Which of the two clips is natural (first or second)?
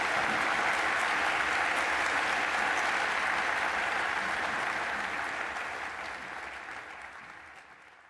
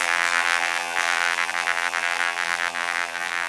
first